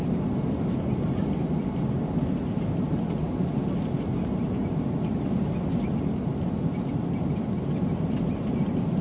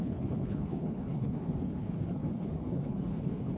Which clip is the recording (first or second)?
first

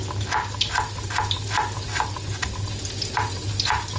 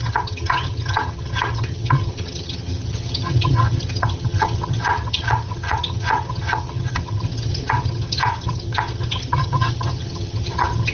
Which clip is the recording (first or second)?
first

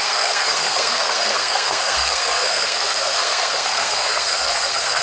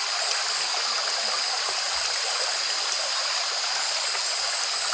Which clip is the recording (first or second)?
second